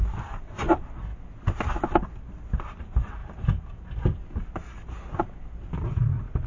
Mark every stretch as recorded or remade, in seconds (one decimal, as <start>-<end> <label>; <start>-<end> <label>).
0.0-6.5 recorded